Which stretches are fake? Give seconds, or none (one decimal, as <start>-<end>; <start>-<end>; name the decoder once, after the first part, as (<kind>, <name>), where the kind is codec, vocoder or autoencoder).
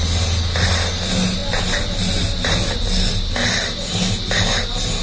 none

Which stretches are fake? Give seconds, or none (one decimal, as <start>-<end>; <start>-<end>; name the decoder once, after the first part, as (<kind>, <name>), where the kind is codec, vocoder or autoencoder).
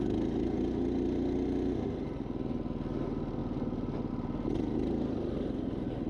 none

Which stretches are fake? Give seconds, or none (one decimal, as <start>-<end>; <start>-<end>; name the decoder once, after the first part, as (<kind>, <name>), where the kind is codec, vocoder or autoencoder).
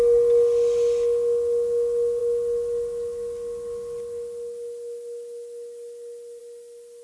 none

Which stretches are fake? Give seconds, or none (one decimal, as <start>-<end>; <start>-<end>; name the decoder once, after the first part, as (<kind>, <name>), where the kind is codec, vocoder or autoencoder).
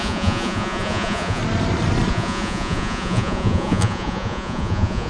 0.0-1.4 (vocoder, Vocos); 2.1-5.1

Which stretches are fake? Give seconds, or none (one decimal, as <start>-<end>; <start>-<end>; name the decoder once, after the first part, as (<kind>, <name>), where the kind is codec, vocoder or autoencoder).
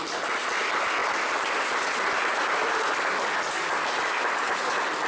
none